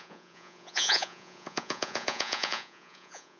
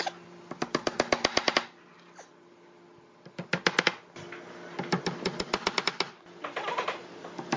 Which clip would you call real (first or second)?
second